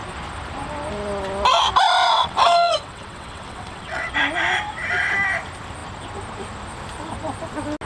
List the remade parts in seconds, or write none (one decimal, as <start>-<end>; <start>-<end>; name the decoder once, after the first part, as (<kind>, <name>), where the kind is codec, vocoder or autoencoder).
2.0-4.1 (vocoder, WaveNeXt)